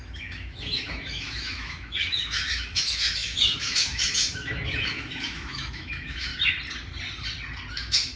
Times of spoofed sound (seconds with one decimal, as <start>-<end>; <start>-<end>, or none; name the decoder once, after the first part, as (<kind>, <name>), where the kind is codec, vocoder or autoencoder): 0.0-6.3 (autoencoder, DAC-VAE); 7.7-8.2